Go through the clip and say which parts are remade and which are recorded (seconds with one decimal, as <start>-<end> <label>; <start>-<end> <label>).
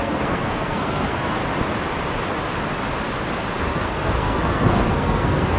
0.0-1.4 remade; 1.4-3.6 recorded; 3.6-5.6 remade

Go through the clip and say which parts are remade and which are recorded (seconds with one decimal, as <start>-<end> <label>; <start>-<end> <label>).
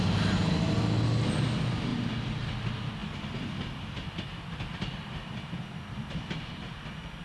0.0-7.2 recorded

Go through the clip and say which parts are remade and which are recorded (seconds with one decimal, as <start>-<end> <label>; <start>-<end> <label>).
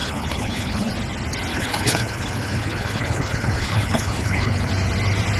0.0-0.9 remade; 0.9-1.5 recorded; 1.5-4.7 remade; 4.7-5.4 recorded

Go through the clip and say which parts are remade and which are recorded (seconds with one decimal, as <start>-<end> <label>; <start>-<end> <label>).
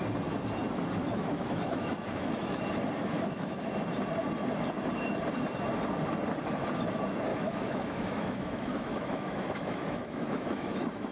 0.0-1.0 recorded; 1.0-2.6 remade; 2.6-3.0 recorded; 3.0-3.7 remade; 3.7-7.3 recorded; 7.3-11.1 remade